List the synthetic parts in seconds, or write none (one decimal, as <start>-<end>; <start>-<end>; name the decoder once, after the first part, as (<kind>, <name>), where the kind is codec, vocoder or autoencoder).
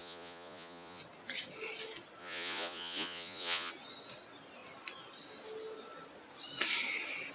0.0-1.0 (vocoder, Vocos); 2.2-3.7